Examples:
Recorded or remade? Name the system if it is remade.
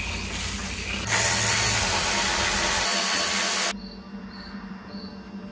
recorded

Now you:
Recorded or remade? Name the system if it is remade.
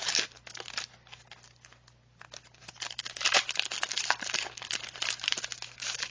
recorded